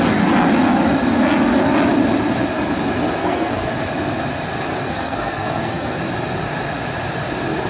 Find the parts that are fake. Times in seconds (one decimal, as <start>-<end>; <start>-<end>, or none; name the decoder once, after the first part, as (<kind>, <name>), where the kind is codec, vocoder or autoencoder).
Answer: 3.2-3.7 (codec, SNAC); 4.7-6.0